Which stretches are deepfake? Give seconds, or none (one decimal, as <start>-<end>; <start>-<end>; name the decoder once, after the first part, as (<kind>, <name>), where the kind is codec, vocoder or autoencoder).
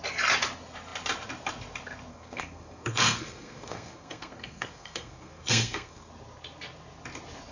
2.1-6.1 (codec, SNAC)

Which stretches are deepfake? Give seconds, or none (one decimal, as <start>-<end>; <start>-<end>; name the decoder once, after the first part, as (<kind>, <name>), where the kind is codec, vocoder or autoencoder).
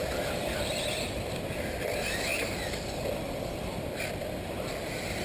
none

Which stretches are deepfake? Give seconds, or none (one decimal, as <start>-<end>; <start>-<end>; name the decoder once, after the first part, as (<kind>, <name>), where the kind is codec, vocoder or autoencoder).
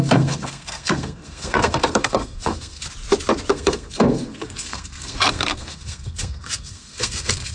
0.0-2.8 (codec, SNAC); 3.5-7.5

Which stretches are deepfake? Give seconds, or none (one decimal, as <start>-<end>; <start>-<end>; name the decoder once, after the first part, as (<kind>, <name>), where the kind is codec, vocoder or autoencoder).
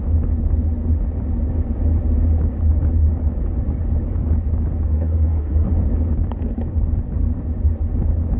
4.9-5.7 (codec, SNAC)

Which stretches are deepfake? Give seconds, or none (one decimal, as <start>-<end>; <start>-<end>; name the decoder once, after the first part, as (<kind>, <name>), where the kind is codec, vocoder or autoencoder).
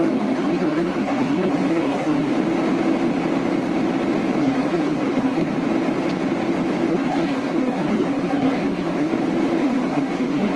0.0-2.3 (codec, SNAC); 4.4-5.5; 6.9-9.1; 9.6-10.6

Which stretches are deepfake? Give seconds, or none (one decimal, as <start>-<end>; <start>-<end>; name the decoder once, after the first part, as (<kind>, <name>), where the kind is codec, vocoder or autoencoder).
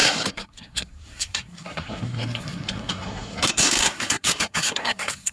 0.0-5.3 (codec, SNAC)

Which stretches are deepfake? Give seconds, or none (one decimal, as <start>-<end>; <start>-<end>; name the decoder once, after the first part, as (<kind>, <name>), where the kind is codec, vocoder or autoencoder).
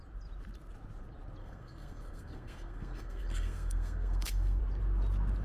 1.4-4.6 (codec, SNAC)